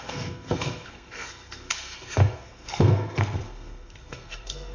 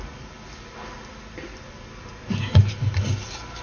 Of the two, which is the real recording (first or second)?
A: second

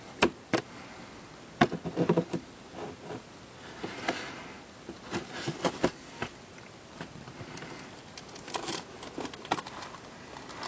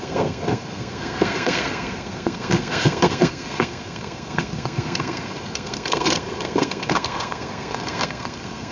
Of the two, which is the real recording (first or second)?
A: first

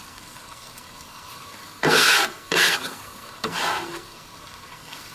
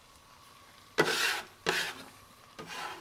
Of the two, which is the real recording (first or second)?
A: second